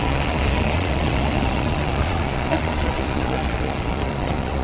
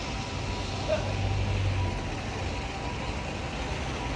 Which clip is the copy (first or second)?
first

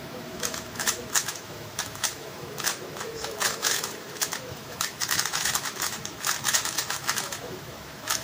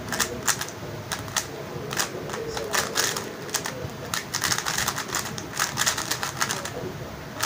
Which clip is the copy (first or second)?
first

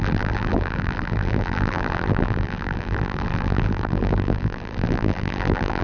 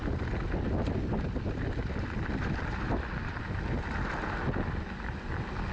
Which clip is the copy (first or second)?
first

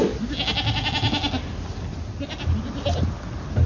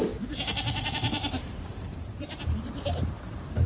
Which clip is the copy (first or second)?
second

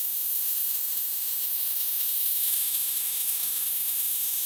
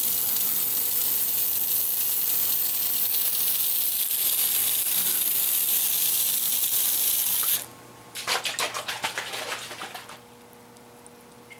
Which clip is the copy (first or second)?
first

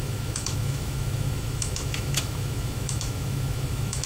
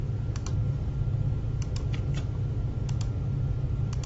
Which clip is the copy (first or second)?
first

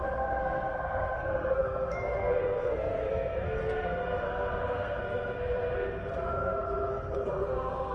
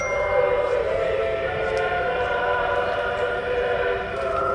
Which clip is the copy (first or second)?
first